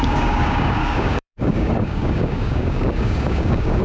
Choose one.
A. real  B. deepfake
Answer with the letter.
B